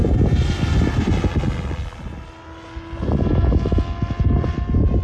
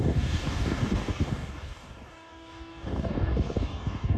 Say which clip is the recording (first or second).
first